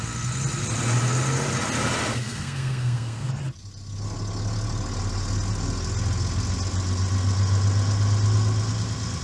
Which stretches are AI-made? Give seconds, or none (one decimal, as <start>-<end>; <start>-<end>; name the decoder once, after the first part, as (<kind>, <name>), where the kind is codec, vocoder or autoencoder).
2.1-3.4 (codec, SNAC)